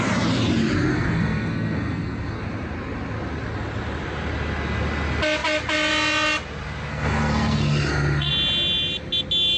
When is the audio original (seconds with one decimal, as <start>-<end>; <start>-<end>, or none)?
0.0-0.9; 2.4-6.9; 8.3-9.6